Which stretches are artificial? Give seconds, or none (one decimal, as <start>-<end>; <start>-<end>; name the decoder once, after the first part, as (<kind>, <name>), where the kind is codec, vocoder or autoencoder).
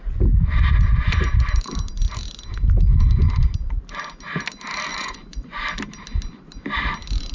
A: 4.9-5.6 (vocoder, Vocos)